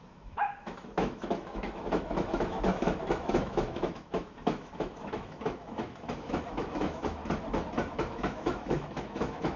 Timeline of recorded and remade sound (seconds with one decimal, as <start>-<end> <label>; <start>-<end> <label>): 0.0-7.2 remade; 7.2-7.9 recorded; 7.9-9.6 remade